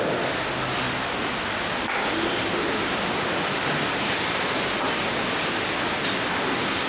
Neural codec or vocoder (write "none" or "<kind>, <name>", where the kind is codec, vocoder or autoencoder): none